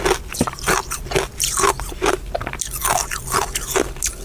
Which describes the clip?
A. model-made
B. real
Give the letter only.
B